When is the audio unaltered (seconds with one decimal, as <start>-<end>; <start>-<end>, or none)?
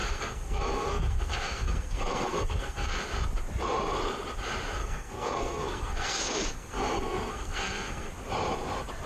3.0-4.8; 8.1-9.1